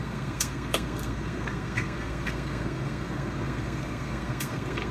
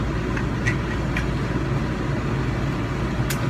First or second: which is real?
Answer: second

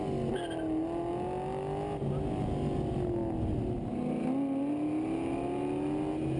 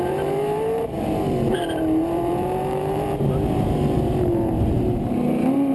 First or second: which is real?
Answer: first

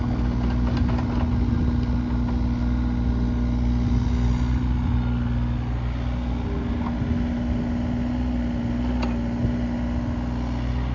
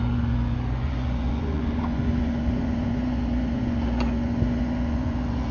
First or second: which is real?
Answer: first